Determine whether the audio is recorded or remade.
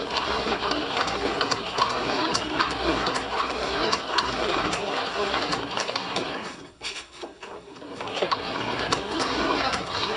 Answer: remade